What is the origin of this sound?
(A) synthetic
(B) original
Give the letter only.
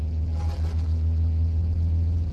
B